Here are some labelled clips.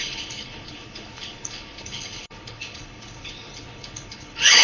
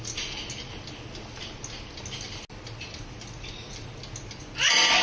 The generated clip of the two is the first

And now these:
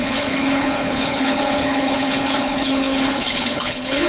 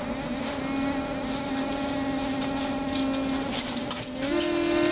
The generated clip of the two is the first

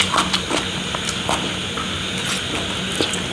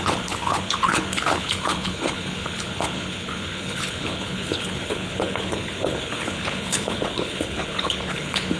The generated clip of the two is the second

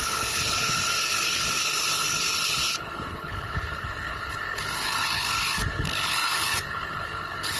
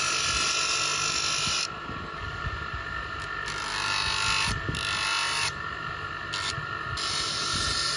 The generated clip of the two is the first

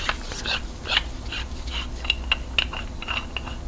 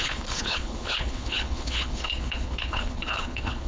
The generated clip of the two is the second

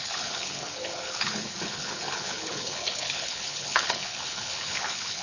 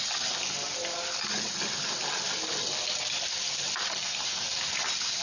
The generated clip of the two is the first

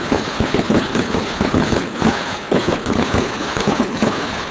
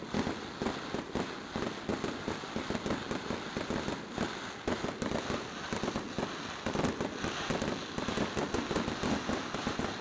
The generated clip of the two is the first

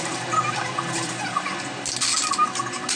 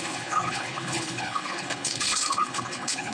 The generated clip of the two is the second